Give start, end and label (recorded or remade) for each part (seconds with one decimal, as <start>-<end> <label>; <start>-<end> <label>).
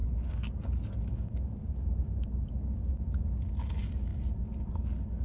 0.0-3.1 remade; 3.1-5.2 recorded